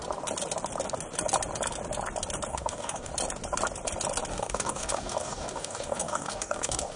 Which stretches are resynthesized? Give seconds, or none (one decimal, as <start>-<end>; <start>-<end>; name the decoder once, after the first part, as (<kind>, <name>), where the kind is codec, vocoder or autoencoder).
2.5-3.1 (codec, DAC); 4.3-7.0